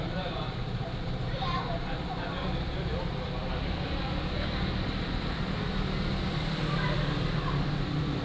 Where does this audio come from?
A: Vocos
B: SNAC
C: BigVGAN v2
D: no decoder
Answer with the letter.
C